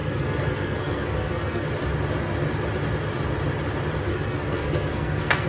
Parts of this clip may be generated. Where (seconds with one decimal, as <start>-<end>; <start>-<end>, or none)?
0.0-1.7; 4.1-5.5